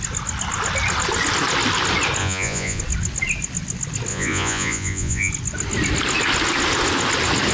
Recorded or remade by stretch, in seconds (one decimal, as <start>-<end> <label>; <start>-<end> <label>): 0.0-2.2 recorded; 2.2-2.8 remade; 2.8-4.1 recorded; 4.1-5.3 remade; 5.3-7.5 recorded